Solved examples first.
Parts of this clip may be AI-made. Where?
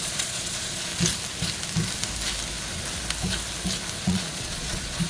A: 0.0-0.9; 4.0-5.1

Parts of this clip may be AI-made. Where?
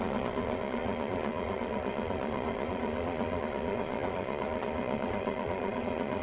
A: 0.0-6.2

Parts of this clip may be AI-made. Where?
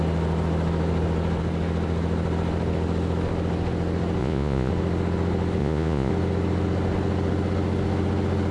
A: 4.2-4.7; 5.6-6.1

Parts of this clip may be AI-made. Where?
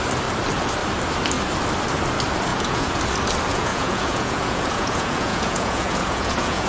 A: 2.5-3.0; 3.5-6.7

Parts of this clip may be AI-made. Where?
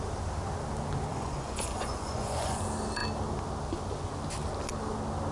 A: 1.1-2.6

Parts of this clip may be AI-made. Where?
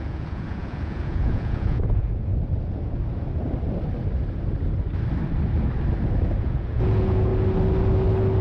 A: 0.0-2.3; 6.4-7.3